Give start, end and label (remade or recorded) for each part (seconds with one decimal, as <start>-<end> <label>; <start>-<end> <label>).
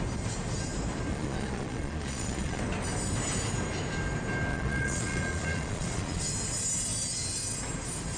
0.0-1.1 recorded; 1.1-2.6 remade; 2.6-4.5 recorded; 4.5-6.2 remade; 6.2-8.2 recorded